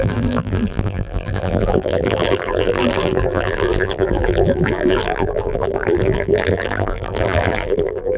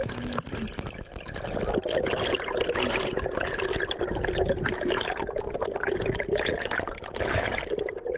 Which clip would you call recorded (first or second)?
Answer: second